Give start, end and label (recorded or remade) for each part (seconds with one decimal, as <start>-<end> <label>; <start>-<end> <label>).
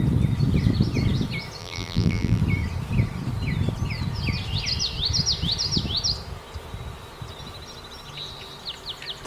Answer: 0.0-1.6 recorded; 1.6-2.4 remade; 2.4-9.3 recorded